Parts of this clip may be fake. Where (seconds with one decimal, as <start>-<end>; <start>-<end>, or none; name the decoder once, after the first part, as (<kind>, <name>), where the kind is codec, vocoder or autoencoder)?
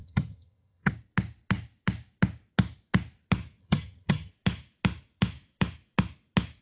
0.0-0.9 (vocoder, HiFi-GAN); 3.6-4.3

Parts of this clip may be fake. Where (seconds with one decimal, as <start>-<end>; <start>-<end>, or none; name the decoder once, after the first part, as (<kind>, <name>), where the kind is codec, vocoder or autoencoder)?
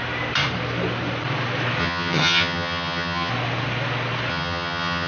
1.8-3.3 (vocoder, HiFi-GAN); 4.3-5.1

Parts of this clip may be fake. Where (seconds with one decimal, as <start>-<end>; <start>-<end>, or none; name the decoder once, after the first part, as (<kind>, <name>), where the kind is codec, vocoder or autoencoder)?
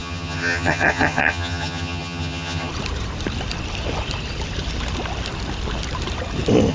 0.0-2.7 (vocoder, HiFi-GAN)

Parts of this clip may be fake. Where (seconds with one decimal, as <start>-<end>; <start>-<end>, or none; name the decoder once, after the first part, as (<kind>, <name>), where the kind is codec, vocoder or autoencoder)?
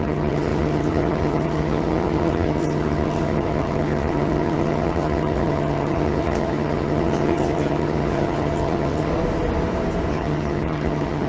0.0-9.1 (vocoder, HiFi-GAN); 10.1-11.3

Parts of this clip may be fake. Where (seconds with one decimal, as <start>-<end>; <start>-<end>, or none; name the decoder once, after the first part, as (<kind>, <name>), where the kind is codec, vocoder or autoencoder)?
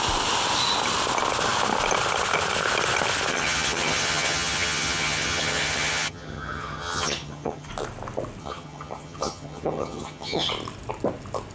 3.3-7.7 (vocoder, HiFi-GAN); 8.4-10.5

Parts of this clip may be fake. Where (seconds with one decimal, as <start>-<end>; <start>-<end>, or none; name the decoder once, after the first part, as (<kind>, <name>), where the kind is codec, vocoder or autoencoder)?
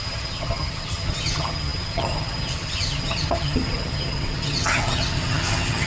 0.0-5.9 (vocoder, HiFi-GAN)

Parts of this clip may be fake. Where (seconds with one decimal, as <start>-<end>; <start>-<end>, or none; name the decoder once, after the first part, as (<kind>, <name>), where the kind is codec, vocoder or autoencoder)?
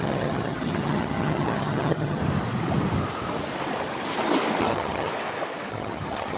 0.0-2.2 (vocoder, HiFi-GAN); 4.6-5.1; 5.7-6.4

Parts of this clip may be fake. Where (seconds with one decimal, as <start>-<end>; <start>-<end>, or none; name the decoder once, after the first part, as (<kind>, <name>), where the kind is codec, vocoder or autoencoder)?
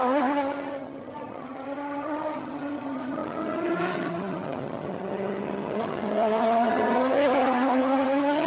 0.0-8.5 (vocoder, HiFi-GAN)